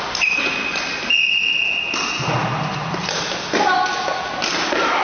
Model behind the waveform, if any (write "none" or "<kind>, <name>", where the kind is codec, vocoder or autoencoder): none